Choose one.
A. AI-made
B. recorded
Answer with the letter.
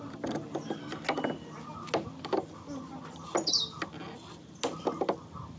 B